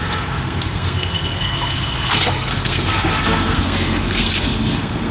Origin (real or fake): fake